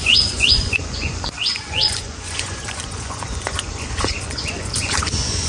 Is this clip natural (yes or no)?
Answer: no